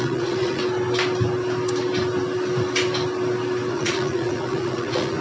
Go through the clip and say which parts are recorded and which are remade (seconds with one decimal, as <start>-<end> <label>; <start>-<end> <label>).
0.0-0.6 remade; 0.6-3.7 recorded; 3.7-5.2 remade